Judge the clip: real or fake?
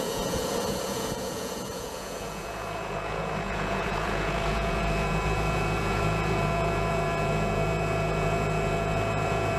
fake